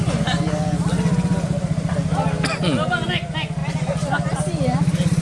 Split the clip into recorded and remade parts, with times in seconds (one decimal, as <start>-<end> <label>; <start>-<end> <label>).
0.0-5.2 recorded